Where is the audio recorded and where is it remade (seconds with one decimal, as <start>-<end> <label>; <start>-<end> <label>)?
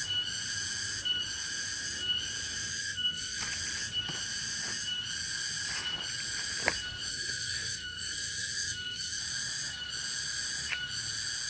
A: 0.0-2.7 recorded; 2.7-3.4 remade; 3.4-7.1 recorded; 7.1-9.2 remade; 9.2-11.5 recorded